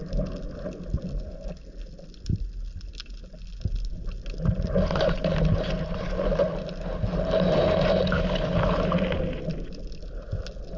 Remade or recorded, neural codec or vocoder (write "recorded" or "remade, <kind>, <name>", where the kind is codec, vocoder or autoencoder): recorded